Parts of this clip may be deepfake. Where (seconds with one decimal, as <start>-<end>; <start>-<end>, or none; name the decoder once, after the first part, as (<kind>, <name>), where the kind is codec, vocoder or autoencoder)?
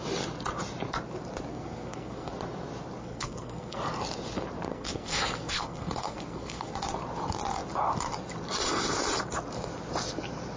1.5-2.3 (codec, SNAC); 3.0-3.8; 4.7-6.7